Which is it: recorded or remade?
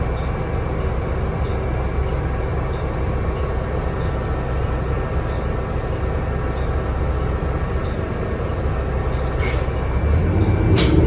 recorded